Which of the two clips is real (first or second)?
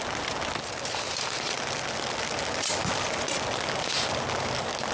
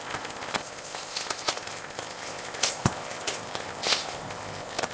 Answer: first